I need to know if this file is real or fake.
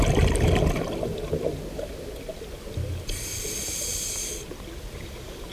real